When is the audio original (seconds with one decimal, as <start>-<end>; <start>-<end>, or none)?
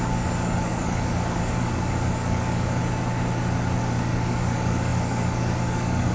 2.8-3.8